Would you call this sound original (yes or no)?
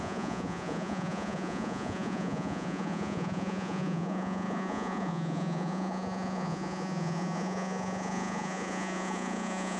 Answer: no